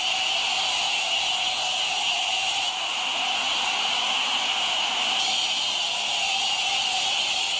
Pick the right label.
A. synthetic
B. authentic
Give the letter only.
B